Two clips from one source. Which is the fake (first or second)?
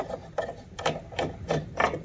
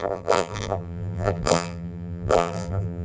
second